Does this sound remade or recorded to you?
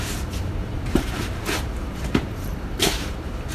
remade